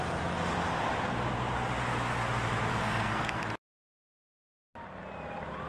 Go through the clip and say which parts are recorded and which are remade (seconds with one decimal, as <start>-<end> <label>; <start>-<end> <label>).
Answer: 0.0-2.7 recorded; 2.7-3.4 remade; 3.4-5.7 recorded